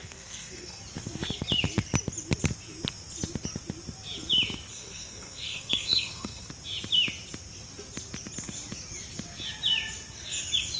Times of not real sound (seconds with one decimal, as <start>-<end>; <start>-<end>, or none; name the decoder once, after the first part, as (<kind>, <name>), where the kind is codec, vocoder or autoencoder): 0.0-0.8 (codec, SNAC); 4.7-6.5